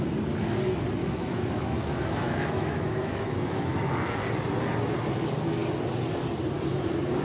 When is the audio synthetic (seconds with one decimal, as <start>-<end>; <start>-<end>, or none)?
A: 1.0-4.1